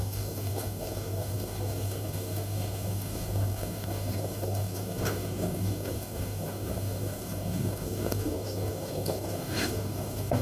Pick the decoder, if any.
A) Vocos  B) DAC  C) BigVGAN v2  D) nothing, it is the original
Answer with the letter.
B